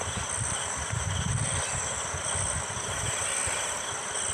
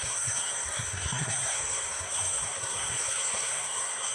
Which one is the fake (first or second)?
second